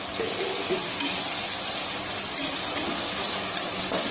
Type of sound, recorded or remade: recorded